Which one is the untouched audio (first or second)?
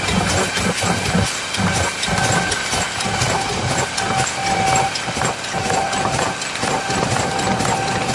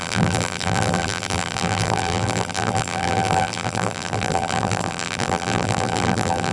first